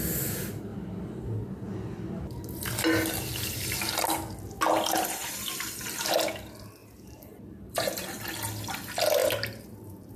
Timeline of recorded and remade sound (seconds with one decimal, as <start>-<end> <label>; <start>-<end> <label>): 0.0-6.8 recorded; 6.8-8.1 remade; 8.1-9.2 recorded; 9.2-10.2 remade